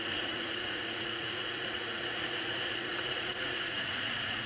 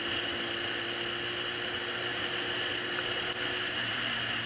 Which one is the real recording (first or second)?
second